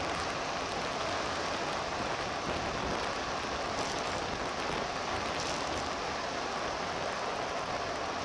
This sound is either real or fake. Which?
real